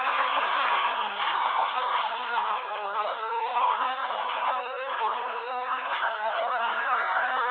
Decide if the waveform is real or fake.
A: fake